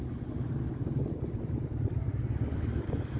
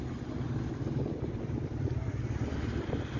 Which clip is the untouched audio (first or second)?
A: second